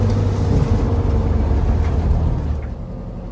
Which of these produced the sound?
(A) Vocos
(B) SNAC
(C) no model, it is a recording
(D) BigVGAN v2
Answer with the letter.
C